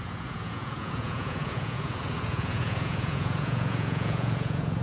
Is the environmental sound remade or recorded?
remade